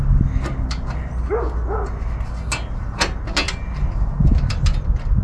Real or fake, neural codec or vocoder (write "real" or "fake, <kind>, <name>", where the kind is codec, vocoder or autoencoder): real